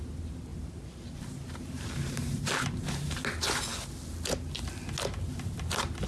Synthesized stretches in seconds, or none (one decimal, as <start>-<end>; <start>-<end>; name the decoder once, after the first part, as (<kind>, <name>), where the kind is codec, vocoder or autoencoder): 0.5-3.2 (vocoder, BigVGAN v2)